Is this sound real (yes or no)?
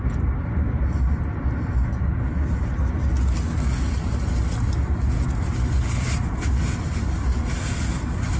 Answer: yes